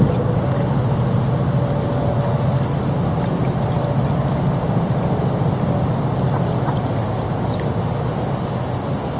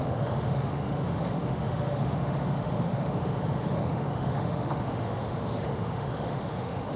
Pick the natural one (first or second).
first